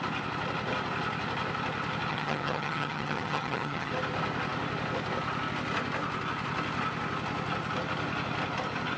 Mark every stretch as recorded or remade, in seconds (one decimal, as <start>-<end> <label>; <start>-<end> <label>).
0.0-2.1 recorded; 2.1-3.9 remade; 3.9-9.0 recorded